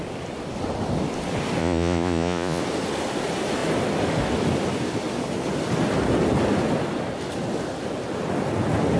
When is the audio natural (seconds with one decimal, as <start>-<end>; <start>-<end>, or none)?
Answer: 0.0-1.6; 2.6-9.0